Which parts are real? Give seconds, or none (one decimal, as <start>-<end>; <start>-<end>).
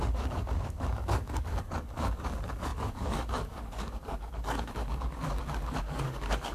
none